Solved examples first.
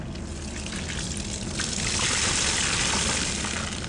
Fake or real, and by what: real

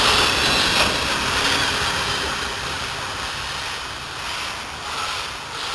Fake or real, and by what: real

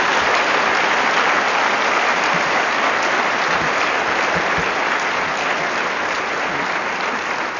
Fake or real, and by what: real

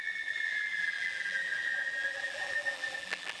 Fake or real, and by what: fake, vocoder, BigVGAN v2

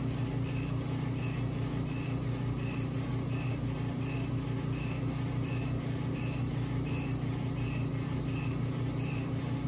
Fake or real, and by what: real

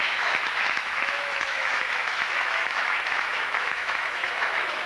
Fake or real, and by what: fake, autoencoder, DAC-VAE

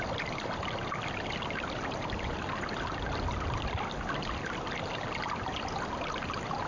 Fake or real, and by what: real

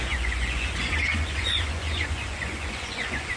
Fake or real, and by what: fake, vocoder, Vocos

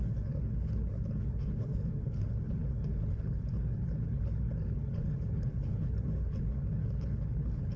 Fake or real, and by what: fake, codec, HILCodec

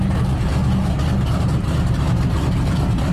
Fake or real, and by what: real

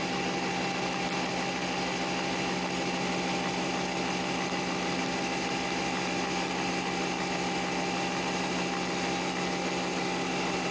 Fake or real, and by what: real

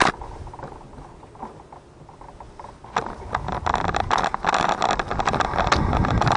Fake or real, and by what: real